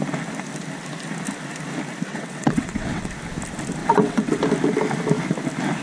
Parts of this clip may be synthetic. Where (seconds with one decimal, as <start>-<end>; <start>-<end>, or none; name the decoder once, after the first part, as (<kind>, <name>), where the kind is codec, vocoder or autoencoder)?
2.1-3.1 (vocoder, WaveNeXt); 3.8-4.4